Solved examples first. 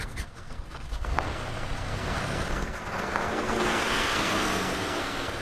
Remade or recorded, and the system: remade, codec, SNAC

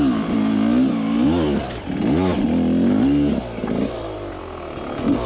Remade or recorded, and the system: recorded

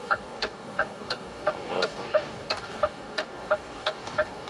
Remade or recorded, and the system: remade, codec, DAC